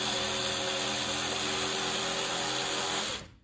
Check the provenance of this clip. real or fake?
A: real